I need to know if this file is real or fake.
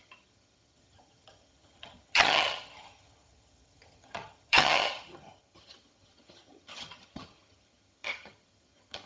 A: fake